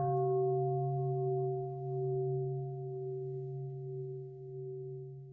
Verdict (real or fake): fake